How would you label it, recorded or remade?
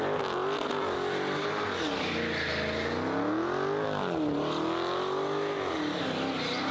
recorded